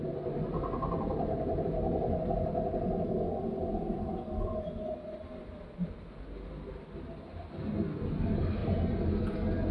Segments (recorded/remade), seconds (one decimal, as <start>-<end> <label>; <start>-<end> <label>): 0.0-9.7 recorded